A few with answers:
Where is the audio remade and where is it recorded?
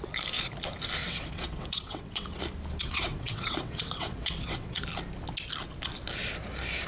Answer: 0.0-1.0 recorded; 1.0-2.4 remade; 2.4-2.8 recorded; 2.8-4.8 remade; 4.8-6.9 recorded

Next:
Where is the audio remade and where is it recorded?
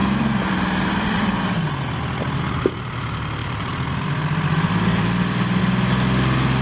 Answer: 0.0-2.4 remade; 2.4-3.4 recorded; 3.4-5.6 remade; 5.6-6.6 recorded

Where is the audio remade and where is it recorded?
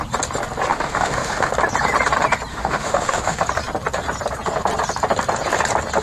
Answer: 0.0-0.7 recorded; 0.7-1.5 remade; 1.5-2.5 recorded; 2.5-3.4 remade; 3.4-6.0 recorded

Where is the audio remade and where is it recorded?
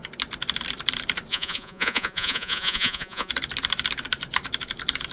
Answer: 0.0-1.3 recorded; 1.3-3.3 remade; 3.3-5.1 recorded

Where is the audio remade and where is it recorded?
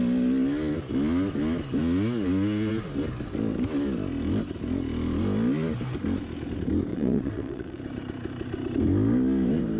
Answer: 0.0-6.9 recorded; 6.9-7.8 remade; 7.8-9.8 recorded